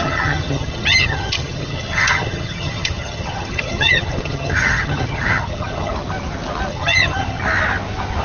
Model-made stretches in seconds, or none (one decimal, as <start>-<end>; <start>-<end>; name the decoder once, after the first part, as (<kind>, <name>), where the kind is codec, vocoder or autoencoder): 0.0-5.9 (vocoder, HiFi-GAN); 6.7-7.4